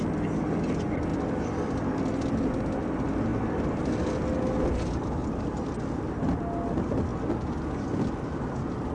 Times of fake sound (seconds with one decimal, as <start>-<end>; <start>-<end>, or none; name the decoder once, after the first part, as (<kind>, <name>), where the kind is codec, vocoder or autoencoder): 1.1-2.6 (vocoder, BigVGAN v2); 3.3-3.8; 5.2-6.4